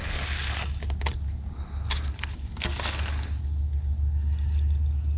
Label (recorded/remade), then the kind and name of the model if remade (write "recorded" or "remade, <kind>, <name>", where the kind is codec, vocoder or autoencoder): recorded